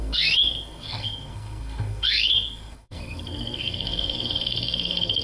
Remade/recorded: remade